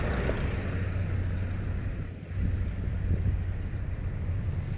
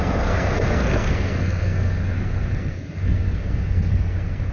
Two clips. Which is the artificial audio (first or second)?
second